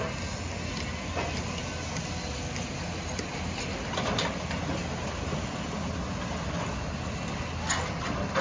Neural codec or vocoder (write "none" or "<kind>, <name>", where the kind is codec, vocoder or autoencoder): none